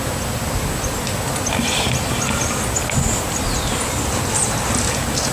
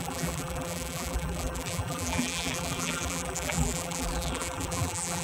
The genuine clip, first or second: first